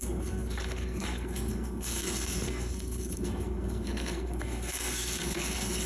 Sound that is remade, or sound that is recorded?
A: remade